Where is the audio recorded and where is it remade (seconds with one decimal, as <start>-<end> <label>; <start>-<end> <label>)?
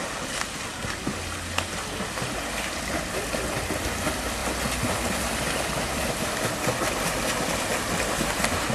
0.0-8.7 recorded